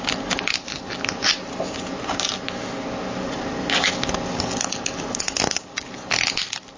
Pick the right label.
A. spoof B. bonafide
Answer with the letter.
B